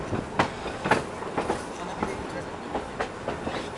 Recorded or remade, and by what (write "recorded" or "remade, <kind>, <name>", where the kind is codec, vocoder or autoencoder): recorded